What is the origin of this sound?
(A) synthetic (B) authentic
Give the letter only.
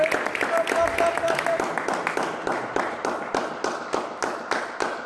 B